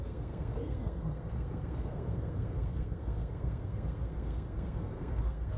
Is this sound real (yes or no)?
no